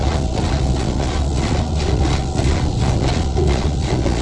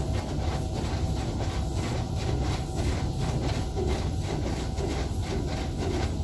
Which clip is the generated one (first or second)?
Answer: first